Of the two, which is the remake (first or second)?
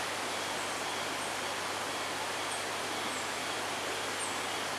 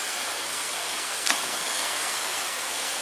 second